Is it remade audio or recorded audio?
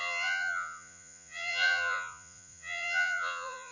remade